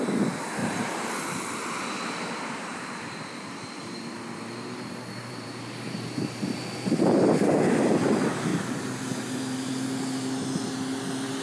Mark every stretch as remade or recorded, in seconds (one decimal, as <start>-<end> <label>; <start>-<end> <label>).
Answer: 0.0-0.6 recorded; 0.6-1.1 remade; 1.1-2.7 recorded; 2.7-6.5 remade; 6.5-8.5 recorded; 8.5-9.0 remade; 9.0-11.4 recorded